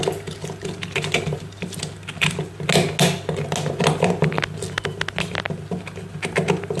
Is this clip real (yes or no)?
yes